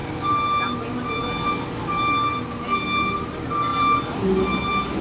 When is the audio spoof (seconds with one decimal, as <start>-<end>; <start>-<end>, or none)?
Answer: none

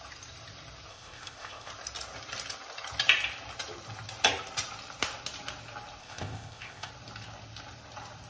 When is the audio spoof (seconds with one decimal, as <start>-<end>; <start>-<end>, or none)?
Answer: 0.9-1.7; 6.0-6.9

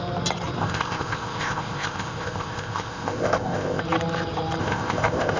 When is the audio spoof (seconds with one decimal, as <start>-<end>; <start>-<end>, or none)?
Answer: 0.6-3.8; 4.6-5.4